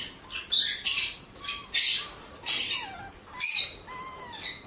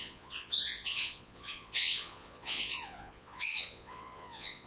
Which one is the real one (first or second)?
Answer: first